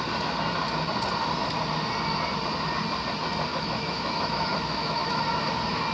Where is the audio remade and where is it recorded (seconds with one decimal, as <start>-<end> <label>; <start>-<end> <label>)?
0.0-3.5 recorded; 3.5-5.2 remade; 5.2-5.9 recorded